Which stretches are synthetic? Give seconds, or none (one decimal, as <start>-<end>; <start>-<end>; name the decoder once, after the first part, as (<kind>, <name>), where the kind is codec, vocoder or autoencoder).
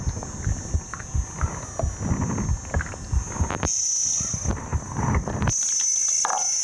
none